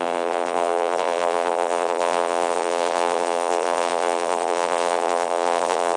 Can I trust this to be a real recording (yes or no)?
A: no